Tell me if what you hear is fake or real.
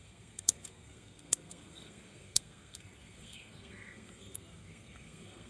fake